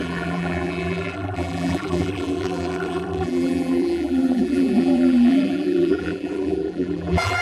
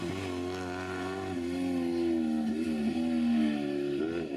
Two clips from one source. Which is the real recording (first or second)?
second